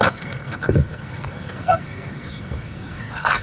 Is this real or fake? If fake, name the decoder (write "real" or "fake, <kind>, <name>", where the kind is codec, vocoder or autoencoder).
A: fake, codec, SNAC